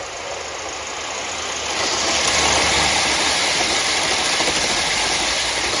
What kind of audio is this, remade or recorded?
recorded